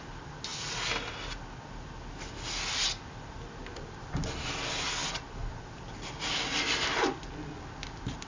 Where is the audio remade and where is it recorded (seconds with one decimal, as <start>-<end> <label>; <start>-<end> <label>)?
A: 0.0-8.3 recorded